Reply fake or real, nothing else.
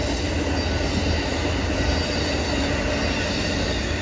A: real